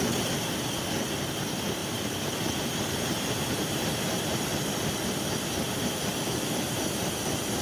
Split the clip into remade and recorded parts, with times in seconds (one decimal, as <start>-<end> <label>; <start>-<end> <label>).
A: 0.0-1.8 recorded; 1.8-4.5 remade; 4.5-6.1 recorded; 6.1-7.0 remade; 7.0-7.6 recorded